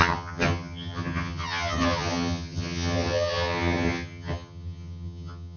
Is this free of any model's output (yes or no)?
no